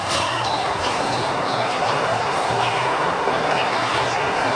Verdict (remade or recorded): remade